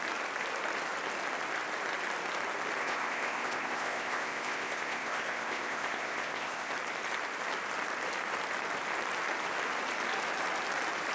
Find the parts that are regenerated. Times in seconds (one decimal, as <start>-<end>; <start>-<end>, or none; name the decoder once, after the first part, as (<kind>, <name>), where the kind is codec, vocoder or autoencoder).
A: 2.8-6.7 (codec, ZipCodec)